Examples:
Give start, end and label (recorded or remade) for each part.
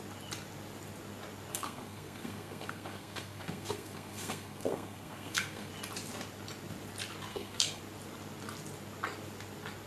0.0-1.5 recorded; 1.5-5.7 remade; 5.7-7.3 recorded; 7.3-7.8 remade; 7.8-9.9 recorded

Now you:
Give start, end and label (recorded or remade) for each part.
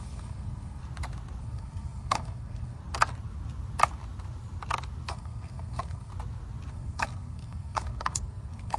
0.0-0.8 remade; 0.8-1.4 recorded; 1.4-2.8 remade; 2.8-5.1 recorded; 5.1-6.1 remade; 6.1-6.7 recorded; 6.7-8.8 remade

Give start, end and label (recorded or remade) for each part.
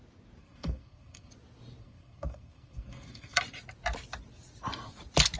0.0-0.4 recorded; 0.4-1.3 remade; 1.3-1.8 recorded; 1.8-3.4 remade; 3.4-5.4 recorded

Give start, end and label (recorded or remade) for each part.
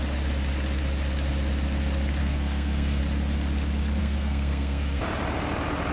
0.0-2.2 recorded; 2.2-3.0 remade; 3.0-4.0 recorded; 4.0-5.0 remade; 5.0-5.9 recorded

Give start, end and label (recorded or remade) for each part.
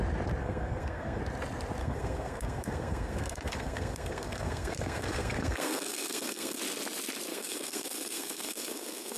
0.0-0.4 recorded; 0.4-1.2 remade; 1.2-1.8 recorded; 1.8-6.6 remade; 6.6-7.3 recorded; 7.3-9.2 remade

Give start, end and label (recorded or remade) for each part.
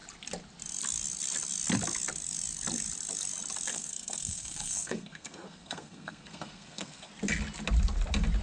0.0-3.7 recorded; 3.7-7.1 remade; 7.1-8.4 recorded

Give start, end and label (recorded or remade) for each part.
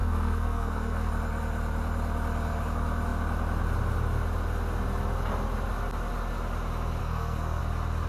0.0-1.1 remade; 1.1-7.0 recorded; 7.0-7.6 remade; 7.6-8.1 recorded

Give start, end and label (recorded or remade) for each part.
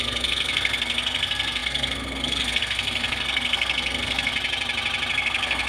0.0-4.3 remade; 4.3-5.1 recorded; 5.1-5.7 remade